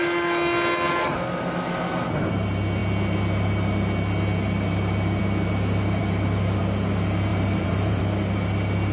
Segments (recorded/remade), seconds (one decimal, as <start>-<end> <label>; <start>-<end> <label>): 0.0-7.3 recorded; 7.3-8.0 remade; 8.0-8.9 recorded